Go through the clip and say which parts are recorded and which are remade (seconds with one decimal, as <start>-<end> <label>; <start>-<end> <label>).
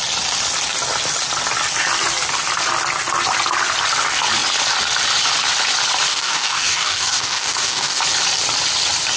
0.0-6.1 recorded; 6.1-8.0 remade; 8.0-9.2 recorded